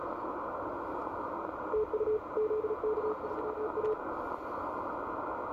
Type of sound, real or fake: real